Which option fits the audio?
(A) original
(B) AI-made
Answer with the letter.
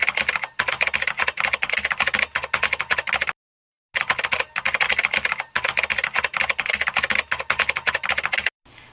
A